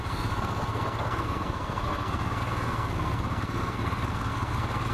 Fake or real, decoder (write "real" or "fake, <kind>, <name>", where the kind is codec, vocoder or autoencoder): fake, codec, SNAC